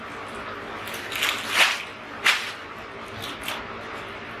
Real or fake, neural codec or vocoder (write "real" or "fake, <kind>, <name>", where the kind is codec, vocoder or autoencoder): real